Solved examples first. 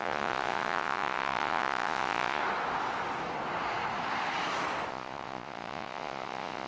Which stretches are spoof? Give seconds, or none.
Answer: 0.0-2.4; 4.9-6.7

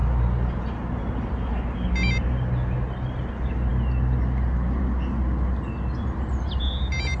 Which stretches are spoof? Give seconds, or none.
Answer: none

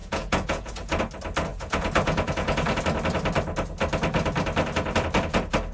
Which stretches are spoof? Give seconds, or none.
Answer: 0.0-1.0; 1.5-2.8

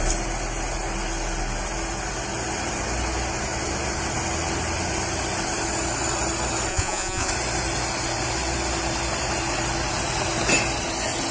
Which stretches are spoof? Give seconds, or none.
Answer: 6.7-7.3

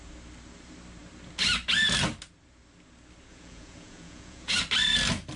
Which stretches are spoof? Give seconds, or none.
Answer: 3.3-4.5